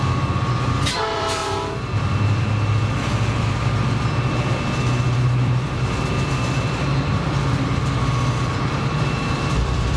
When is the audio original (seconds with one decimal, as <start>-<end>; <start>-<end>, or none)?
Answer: none